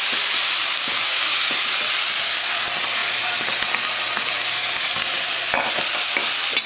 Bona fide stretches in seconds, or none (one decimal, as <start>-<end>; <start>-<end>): 0.0-0.6; 1.5-6.7